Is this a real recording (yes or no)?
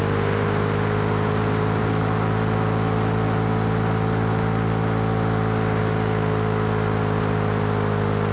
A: yes